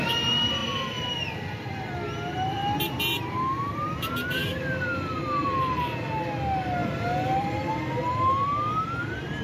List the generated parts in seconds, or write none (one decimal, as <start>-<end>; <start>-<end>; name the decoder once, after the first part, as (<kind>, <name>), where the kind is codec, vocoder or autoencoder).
0.6-1.9 (vocoder, BigVGAN v2); 6.8-7.7

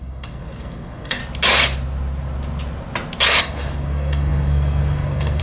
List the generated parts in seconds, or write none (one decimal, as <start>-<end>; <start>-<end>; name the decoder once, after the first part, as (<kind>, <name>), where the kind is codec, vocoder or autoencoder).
0.0-1.2 (codec, SNAC); 3.4-5.4

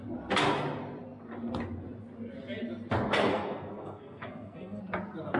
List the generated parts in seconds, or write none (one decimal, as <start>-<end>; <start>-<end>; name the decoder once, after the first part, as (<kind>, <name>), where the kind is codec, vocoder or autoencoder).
3.3-4.8 (codec, SNAC)